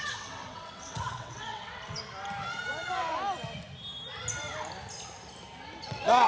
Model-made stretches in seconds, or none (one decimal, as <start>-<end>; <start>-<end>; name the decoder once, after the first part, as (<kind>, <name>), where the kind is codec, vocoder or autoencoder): 0.0-2.0 (vocoder, WaveNeXt); 5.8-6.3